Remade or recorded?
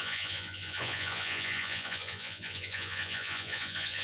remade